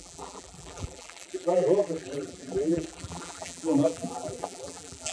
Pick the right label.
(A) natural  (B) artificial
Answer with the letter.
B